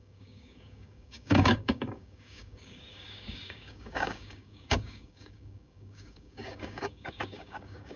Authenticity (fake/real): fake